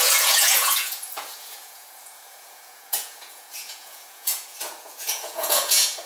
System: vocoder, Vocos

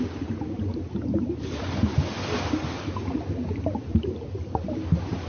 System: none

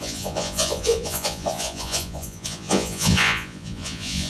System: vocoder, Vocos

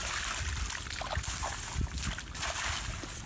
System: none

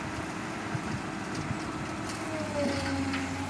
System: none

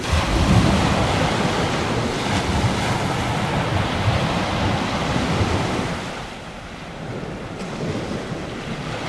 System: none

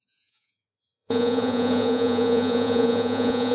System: vocoder, Vocos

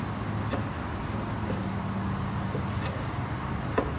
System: none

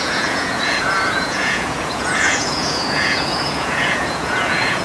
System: vocoder, Vocos